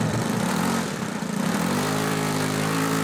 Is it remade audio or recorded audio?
remade